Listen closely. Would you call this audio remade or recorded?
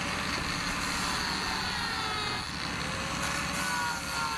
recorded